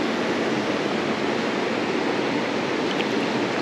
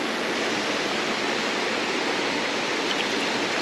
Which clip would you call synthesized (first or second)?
second